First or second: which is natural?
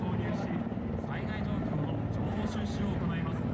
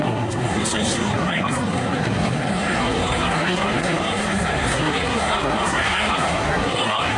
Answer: first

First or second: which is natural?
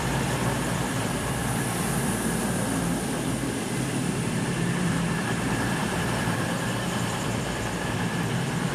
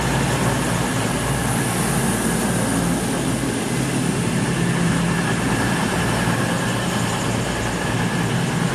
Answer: second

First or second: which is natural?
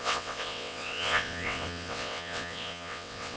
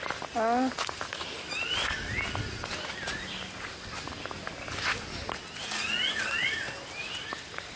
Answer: second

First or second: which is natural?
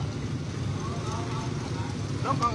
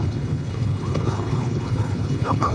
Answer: first